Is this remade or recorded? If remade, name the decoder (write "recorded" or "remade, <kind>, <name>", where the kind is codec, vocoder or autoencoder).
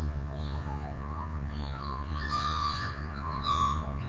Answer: remade, vocoder, Vocos